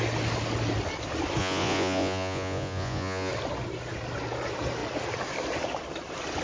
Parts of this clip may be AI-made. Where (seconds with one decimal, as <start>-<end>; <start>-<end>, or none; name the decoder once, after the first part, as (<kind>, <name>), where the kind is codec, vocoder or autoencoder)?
1.4-3.3 (vocoder, Vocos)